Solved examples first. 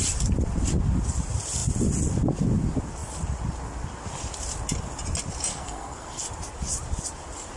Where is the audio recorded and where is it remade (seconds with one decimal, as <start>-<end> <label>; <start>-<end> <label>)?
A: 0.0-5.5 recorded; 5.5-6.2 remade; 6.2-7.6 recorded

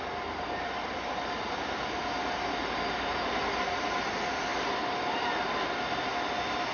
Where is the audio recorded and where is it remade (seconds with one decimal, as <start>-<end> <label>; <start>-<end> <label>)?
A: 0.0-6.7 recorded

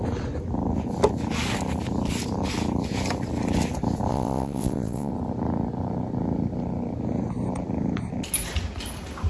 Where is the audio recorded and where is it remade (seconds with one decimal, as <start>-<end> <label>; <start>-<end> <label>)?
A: 0.0-4.1 recorded; 4.1-5.1 remade; 5.1-9.3 recorded